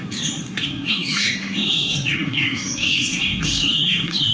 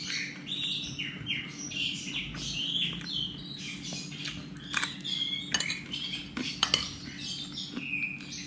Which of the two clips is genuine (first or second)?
second